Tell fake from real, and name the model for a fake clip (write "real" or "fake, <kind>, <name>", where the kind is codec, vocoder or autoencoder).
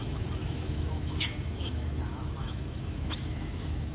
fake, autoencoder, DAC-VAE